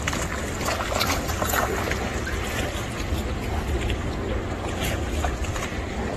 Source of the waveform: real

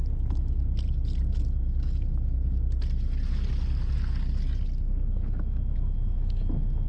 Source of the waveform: real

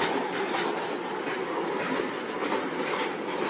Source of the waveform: real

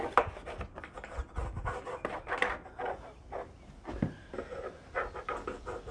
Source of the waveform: real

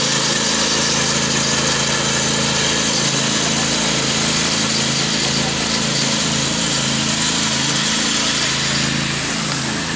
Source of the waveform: real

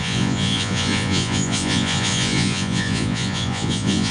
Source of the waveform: fake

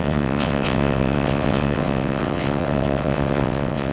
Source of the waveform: fake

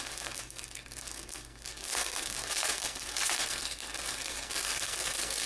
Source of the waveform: fake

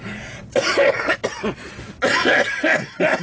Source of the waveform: real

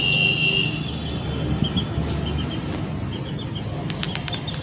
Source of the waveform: real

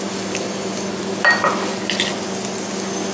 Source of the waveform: real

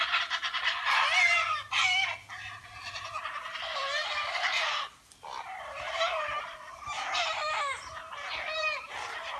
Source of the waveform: fake